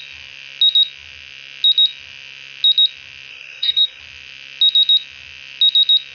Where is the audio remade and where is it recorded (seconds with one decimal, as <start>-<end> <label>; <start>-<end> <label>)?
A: 0.0-3.3 recorded; 3.3-4.0 remade; 4.0-6.1 recorded